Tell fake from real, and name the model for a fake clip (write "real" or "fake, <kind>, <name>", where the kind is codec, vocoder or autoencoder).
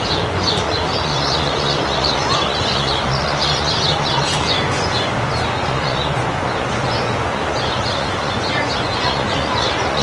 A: fake, vocoder, Vocos